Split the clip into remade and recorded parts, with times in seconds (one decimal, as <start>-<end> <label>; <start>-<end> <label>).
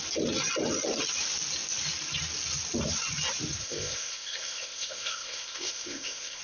0.0-3.6 recorded; 3.6-6.4 remade